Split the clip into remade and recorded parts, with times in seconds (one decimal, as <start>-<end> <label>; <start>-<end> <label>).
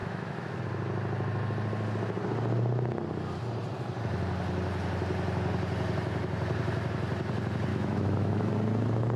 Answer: 0.0-0.6 remade; 0.6-7.7 recorded; 7.7-8.5 remade; 8.5-9.2 recorded